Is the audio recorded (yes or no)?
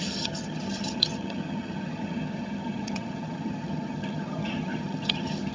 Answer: no